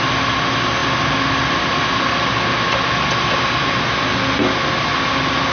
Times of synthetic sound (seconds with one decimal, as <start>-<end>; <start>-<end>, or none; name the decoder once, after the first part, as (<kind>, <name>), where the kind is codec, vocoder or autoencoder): none